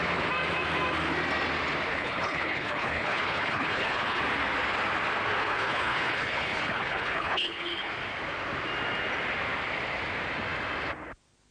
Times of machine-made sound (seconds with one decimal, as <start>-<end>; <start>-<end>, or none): 1.9-4.2; 5.4-7.9